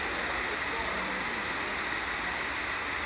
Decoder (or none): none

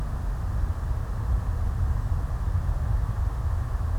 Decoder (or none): none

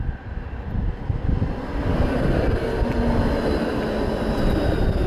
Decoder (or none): none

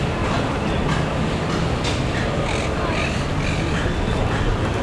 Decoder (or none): none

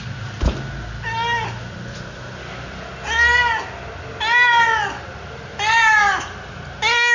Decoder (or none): none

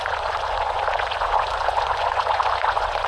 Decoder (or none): vocoder, Vocos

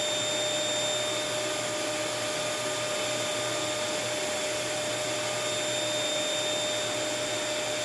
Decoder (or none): none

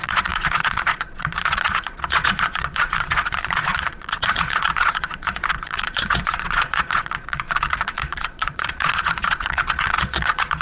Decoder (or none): vocoder, Vocos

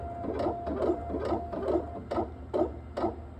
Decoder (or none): none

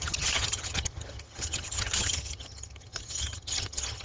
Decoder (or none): vocoder, HiFi-GAN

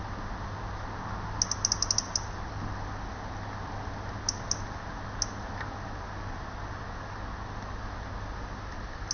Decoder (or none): none